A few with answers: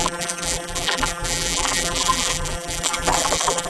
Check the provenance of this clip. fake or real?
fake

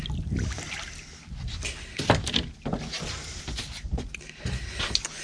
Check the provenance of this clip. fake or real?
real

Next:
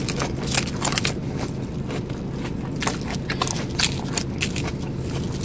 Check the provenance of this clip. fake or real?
real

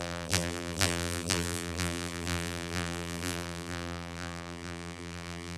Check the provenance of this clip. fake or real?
fake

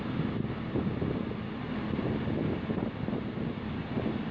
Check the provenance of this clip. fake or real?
real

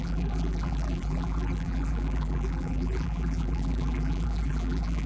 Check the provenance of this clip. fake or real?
fake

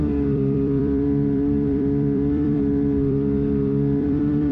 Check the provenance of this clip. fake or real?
fake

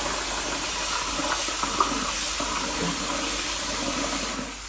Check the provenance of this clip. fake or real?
real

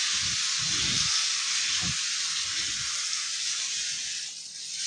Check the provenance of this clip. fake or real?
real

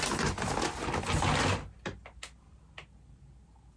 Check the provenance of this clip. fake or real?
real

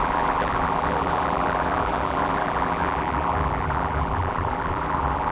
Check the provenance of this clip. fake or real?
fake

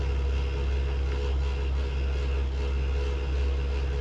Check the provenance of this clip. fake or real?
real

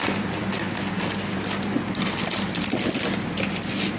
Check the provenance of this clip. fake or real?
fake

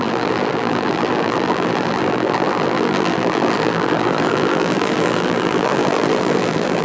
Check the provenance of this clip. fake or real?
fake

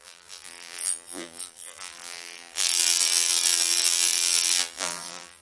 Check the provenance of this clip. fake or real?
fake